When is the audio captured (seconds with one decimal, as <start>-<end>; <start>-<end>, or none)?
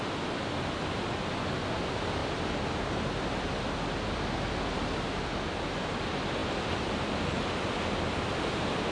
0.0-8.9